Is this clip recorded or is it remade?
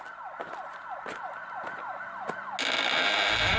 recorded